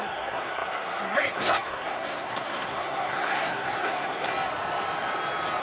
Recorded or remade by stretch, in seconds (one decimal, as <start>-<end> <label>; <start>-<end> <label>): 0.0-4.3 remade; 4.3-5.6 recorded